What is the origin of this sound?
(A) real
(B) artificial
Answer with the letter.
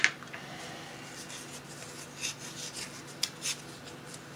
A